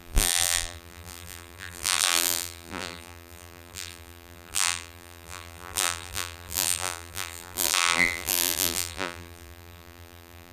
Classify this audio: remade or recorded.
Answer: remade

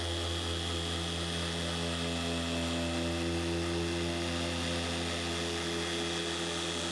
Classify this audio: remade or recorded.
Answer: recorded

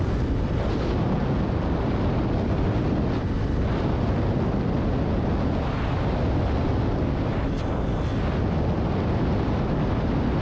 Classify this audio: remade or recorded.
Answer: recorded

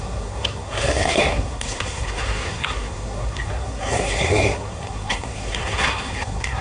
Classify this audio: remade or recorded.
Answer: remade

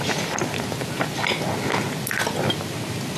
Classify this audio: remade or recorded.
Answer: recorded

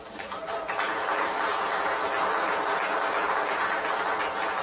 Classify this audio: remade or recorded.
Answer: recorded